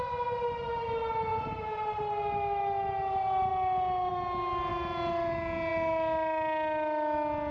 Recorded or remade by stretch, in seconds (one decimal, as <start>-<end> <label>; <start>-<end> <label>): 0.0-1.3 recorded; 1.3-2.0 remade; 2.0-7.5 recorded